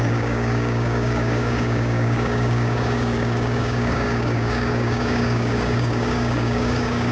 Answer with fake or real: fake